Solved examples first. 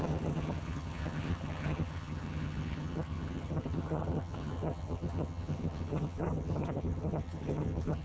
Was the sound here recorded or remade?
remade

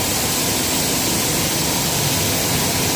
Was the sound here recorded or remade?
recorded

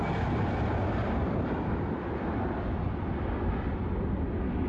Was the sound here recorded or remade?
recorded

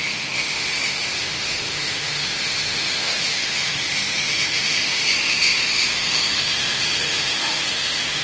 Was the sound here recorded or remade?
remade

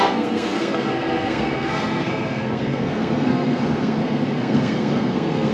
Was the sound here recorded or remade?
remade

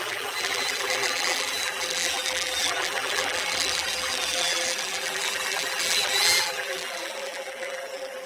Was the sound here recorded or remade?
remade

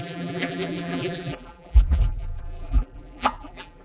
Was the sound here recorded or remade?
remade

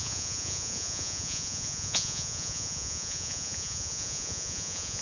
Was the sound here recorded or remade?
remade